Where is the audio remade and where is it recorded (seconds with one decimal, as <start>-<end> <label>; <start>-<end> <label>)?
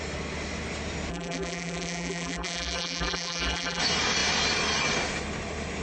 0.0-1.1 recorded; 1.1-3.8 remade; 3.8-5.8 recorded